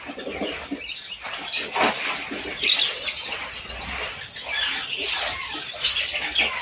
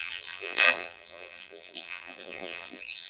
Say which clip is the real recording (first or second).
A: first